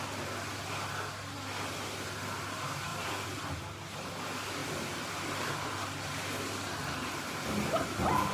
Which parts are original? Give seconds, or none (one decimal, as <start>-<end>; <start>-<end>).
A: 0.0-2.9; 3.5-4.6; 5.9-8.3